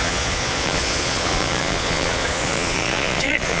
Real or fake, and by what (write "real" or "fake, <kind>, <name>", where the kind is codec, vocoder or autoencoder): fake, vocoder, Vocos